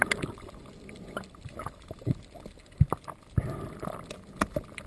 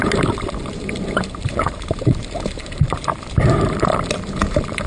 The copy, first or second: second